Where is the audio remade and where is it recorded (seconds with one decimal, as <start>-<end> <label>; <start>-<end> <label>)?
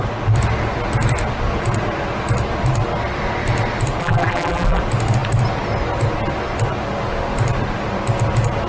0.0-4.0 recorded; 4.0-4.8 remade; 4.8-8.7 recorded